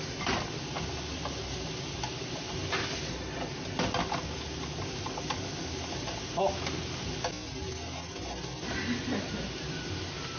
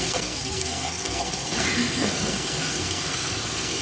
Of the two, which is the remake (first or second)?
second